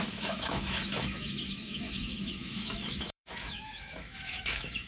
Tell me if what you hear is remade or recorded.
remade